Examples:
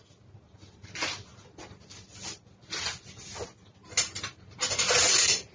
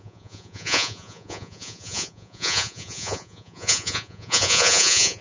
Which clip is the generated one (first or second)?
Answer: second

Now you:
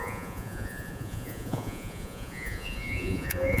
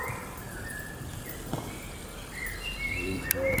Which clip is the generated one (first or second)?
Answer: first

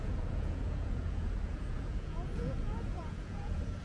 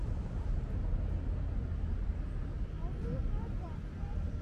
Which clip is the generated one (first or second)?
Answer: first